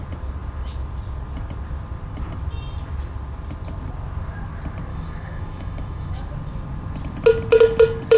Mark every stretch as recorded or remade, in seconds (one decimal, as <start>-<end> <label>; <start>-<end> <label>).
0.0-4.9 recorded; 4.9-6.1 remade; 6.1-8.2 recorded